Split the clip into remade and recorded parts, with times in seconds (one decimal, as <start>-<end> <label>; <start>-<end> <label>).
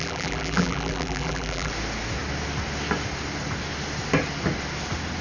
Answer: 0.0-1.7 remade; 1.7-5.2 recorded